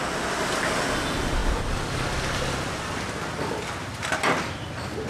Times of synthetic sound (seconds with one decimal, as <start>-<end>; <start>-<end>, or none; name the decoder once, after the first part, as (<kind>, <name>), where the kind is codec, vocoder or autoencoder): none